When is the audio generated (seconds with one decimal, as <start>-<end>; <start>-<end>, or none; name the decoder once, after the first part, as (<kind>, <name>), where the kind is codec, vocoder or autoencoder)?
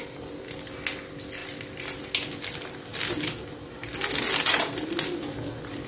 1.4-2.0 (vocoder, BigVGAN v2)